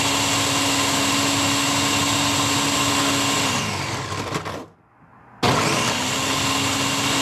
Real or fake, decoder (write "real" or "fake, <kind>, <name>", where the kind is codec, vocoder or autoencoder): real